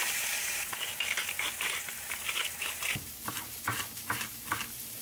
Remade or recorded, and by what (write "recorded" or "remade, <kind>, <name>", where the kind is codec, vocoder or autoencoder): remade, vocoder, BigVGAN v2